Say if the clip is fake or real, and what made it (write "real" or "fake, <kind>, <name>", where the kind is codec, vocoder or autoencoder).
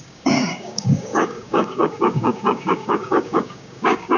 fake, codec, DAC